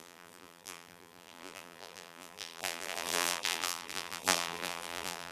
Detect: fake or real fake